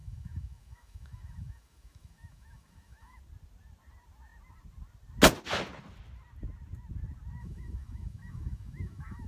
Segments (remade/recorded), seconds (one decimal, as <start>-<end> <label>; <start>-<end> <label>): 0.0-3.2 remade; 3.2-7.4 recorded; 7.4-9.3 remade